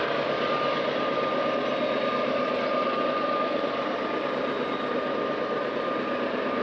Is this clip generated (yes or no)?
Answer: no